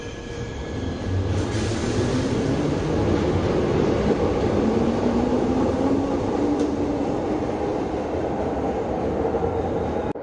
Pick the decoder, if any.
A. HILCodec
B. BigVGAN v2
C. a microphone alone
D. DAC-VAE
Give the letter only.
C